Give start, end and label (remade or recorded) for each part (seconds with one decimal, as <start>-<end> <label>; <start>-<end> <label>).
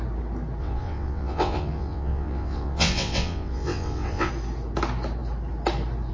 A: 0.0-0.6 recorded; 0.6-4.3 remade; 4.3-6.1 recorded